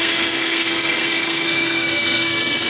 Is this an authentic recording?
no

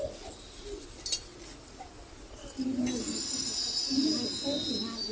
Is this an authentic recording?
yes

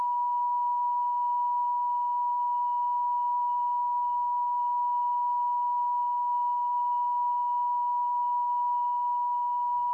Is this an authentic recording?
no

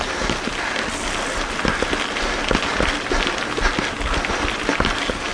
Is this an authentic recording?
yes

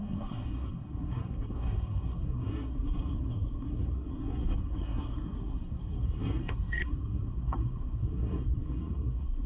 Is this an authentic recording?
no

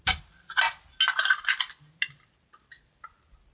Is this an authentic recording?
yes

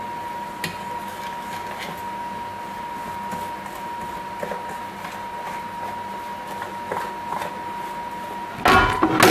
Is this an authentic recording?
yes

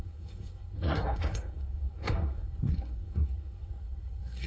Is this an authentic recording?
no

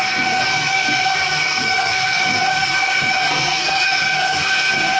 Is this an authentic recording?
no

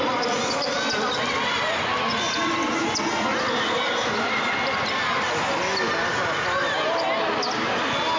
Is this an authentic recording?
yes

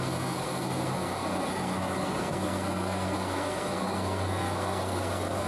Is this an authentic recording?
no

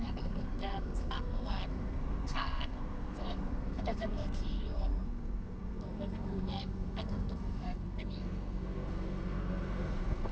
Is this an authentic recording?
no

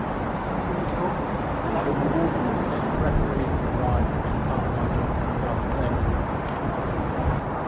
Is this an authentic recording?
yes